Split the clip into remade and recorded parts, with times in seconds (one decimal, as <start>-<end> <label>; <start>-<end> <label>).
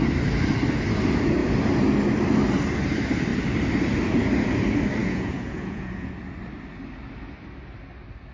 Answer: 0.0-5.0 recorded; 5.0-6.1 remade; 6.1-8.3 recorded